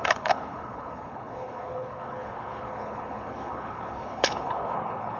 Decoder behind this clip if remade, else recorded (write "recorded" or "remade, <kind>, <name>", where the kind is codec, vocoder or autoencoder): remade, codec, HILCodec